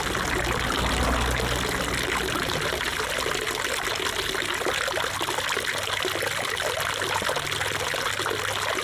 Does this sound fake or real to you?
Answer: real